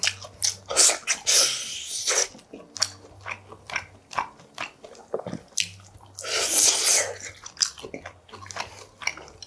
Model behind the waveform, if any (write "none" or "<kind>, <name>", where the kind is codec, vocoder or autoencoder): none